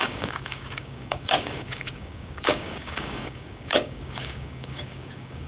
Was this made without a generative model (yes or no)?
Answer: no